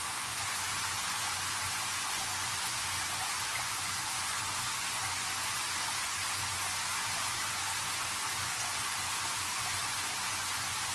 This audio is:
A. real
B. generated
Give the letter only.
B